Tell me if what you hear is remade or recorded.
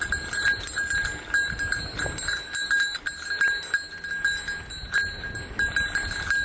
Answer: recorded